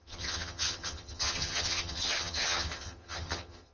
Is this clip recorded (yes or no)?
no